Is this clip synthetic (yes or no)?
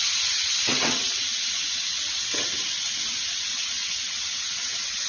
yes